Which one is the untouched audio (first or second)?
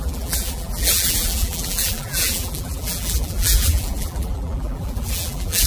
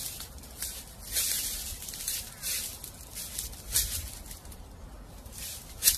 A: second